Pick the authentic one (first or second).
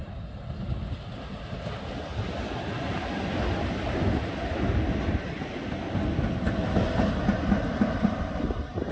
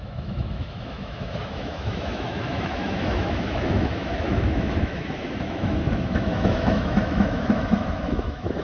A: first